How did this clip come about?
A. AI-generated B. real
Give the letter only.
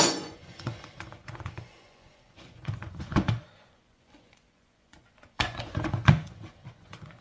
A